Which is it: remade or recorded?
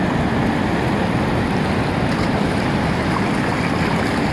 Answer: recorded